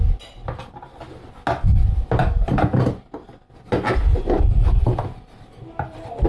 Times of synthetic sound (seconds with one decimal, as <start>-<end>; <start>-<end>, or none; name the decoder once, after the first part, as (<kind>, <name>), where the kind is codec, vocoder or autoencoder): none